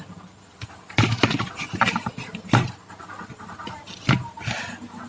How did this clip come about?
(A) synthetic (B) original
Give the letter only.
B